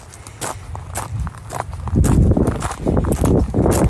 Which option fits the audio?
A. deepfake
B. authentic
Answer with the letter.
B